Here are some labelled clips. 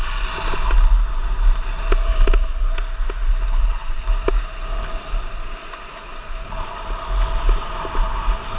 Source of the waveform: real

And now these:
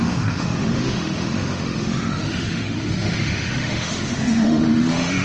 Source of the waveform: fake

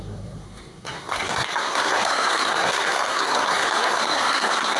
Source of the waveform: fake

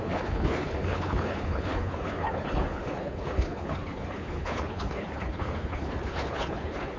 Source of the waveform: fake